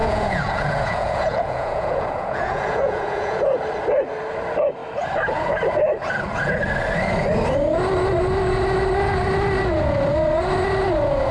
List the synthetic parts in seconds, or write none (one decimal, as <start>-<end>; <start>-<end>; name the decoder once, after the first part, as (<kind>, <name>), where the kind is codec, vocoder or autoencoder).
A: 0.0-3.4 (vocoder, Vocos)